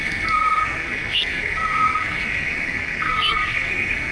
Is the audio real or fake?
fake